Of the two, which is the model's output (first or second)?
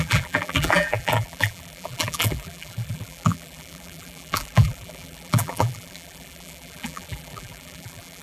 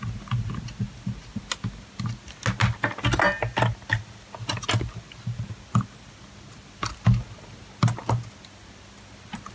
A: first